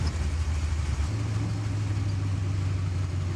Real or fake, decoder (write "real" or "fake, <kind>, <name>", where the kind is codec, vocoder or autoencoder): real